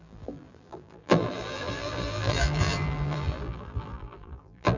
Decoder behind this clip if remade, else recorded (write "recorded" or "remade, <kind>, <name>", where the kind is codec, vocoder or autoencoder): remade, vocoder, BigVGAN v2